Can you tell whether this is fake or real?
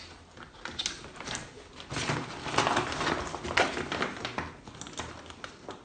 real